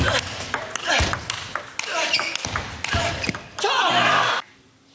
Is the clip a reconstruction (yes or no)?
no